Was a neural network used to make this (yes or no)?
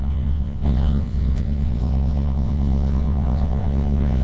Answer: yes